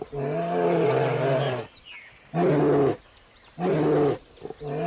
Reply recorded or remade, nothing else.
recorded